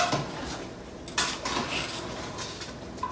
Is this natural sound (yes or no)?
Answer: yes